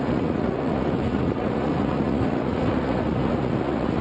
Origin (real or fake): fake